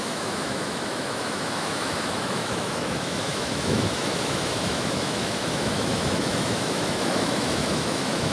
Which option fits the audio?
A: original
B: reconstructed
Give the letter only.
B